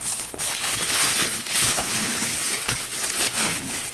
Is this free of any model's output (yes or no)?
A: no